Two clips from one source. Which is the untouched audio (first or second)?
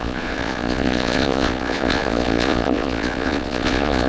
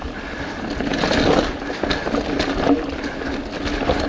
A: second